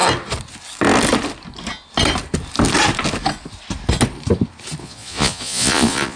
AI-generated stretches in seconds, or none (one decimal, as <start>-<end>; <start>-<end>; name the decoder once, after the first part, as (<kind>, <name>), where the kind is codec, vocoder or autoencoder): 4.8-6.2 (vocoder, Vocos)